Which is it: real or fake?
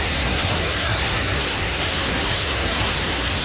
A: fake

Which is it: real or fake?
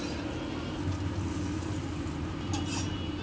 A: real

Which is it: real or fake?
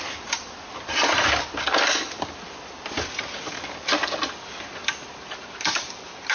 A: real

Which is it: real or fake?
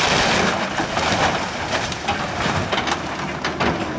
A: real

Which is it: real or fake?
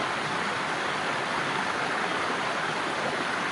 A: real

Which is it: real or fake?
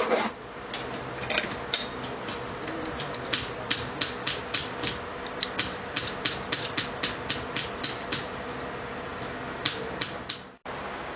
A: real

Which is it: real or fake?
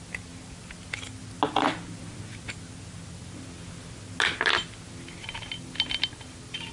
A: real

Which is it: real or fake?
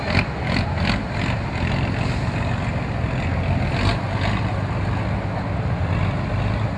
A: real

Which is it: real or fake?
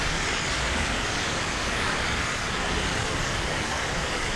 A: fake